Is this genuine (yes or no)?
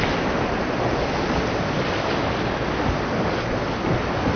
yes